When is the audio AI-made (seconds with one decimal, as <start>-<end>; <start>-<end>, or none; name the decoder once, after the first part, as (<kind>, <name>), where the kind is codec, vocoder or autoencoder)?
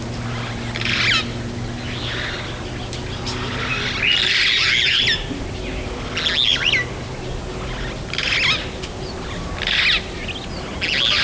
none